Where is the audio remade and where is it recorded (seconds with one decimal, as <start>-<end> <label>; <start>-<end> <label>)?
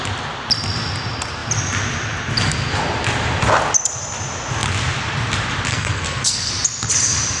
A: 0.0-5.7 recorded; 5.7-6.5 remade; 6.5-7.4 recorded